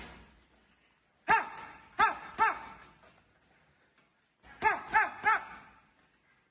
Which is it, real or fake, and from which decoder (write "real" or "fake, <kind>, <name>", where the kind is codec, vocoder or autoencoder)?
real